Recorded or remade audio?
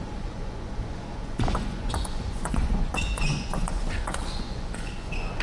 remade